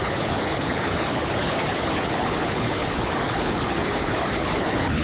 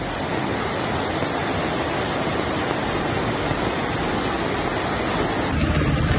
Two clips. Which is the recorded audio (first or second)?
second